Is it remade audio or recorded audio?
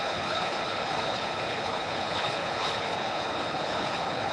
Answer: remade